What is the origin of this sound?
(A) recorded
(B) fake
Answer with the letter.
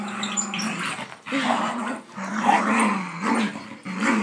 A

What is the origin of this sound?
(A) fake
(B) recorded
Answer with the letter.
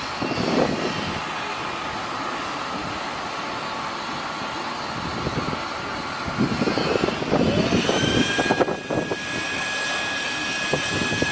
B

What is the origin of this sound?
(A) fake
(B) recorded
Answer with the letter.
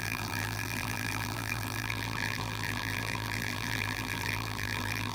A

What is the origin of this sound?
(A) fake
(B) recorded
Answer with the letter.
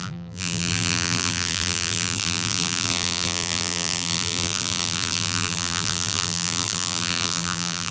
A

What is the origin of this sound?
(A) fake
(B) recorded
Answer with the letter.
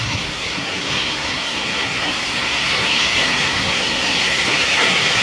A